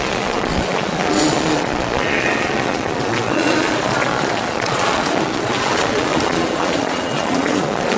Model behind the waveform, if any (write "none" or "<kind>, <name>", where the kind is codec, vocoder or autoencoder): vocoder, Vocos